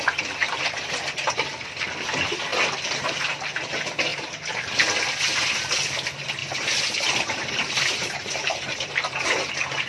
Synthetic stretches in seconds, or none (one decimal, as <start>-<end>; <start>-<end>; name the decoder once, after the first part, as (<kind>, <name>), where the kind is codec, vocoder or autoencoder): 0.4-1.5 (vocoder, BigVGAN v2); 4.1-4.7; 6.4-9.5